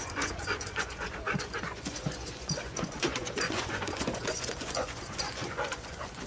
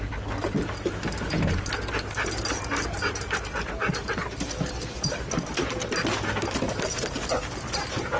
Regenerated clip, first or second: first